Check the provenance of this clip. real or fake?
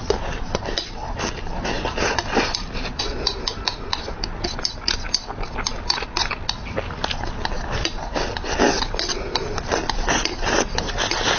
real